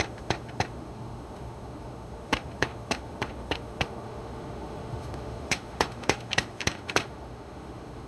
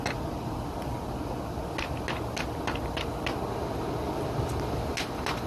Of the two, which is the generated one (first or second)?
first